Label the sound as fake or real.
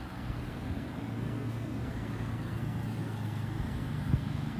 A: fake